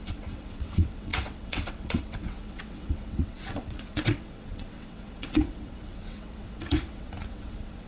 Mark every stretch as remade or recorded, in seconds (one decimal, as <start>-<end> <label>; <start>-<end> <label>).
0.0-7.9 remade